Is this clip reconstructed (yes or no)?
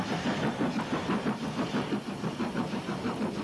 yes